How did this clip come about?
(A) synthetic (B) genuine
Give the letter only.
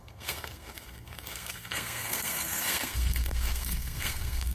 A